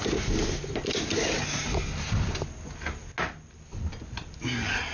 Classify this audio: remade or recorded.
recorded